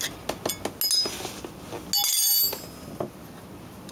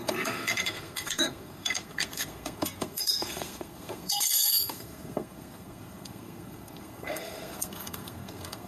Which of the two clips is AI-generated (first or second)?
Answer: second